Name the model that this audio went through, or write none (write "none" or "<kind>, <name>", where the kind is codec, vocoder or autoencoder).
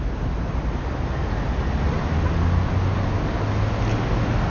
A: none